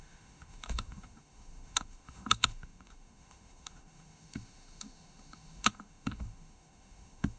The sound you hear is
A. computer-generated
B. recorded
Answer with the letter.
A